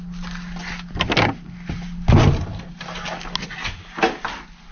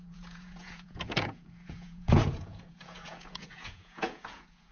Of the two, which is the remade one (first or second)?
second